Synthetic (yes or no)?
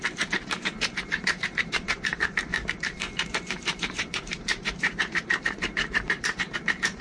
yes